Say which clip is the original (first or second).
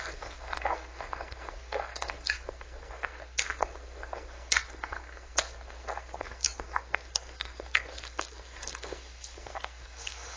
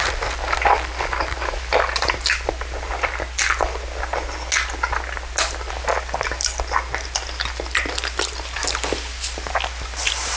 second